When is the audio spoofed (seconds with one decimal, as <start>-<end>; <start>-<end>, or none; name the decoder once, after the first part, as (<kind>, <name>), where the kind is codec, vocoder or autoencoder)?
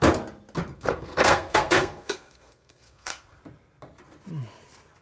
0.7-3.4 (codec, SNAC)